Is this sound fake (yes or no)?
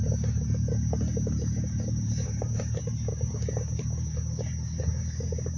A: no